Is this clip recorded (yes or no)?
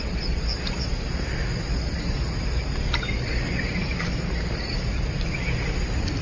yes